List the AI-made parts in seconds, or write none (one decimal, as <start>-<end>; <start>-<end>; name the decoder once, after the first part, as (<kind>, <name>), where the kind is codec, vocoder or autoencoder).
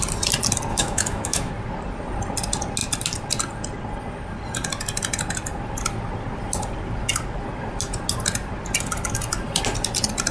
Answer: 0.7-1.5 (autoencoder, DAC-VAE)